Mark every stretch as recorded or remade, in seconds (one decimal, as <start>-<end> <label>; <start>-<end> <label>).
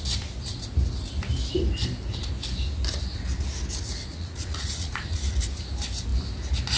0.0-4.1 recorded; 4.1-5.2 remade; 5.2-6.8 recorded